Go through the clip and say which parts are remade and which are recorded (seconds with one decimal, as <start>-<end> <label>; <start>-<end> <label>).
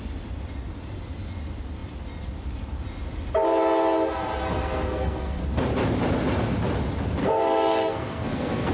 0.0-4.6 recorded; 4.6-5.4 remade; 5.4-7.2 recorded; 7.2-8.7 remade